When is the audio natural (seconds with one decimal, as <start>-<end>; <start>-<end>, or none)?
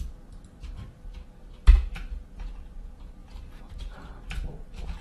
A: 0.0-3.2; 4.1-5.0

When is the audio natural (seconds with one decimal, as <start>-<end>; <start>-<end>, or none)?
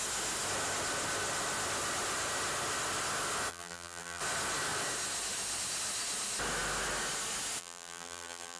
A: 0.0-3.5; 4.2-7.6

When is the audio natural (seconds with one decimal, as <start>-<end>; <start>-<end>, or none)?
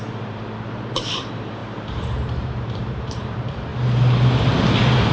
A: 3.7-5.1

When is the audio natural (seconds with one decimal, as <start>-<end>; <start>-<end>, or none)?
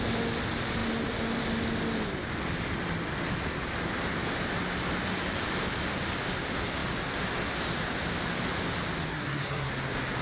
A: 0.0-9.1; 9.7-10.2